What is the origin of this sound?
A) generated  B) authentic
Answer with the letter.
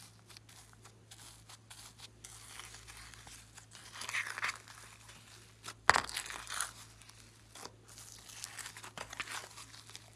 B